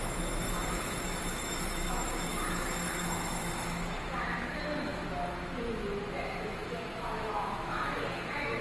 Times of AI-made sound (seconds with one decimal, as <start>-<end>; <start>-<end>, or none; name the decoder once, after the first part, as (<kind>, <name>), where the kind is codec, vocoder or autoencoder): 0.0-8.6 (autoencoder, DAC-VAE)

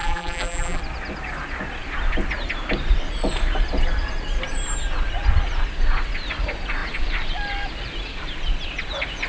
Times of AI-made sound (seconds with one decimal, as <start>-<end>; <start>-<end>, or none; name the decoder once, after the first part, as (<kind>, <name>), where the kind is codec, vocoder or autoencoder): 0.0-0.8 (vocoder, BigVGAN v2)

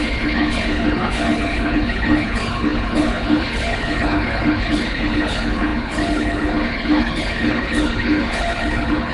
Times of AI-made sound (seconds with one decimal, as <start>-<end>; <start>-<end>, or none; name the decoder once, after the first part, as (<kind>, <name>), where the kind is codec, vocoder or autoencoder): 0.0-9.1 (codec, HILCodec)